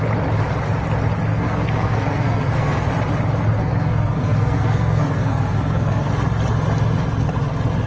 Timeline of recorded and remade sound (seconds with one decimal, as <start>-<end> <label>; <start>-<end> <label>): 0.0-1.3 recorded; 1.3-2.9 remade; 2.9-3.6 recorded; 3.6-6.1 remade; 6.1-7.9 recorded